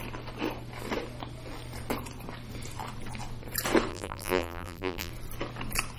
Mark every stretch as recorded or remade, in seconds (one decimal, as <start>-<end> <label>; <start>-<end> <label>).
0.0-3.9 recorded; 3.9-5.1 remade; 5.1-6.0 recorded